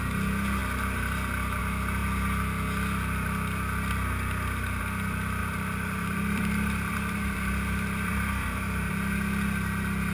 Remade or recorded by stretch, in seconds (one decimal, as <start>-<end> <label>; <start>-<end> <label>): 0.0-5.4 recorded; 5.4-8.9 remade; 8.9-10.1 recorded